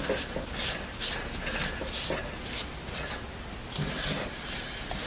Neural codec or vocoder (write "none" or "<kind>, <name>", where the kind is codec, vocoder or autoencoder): none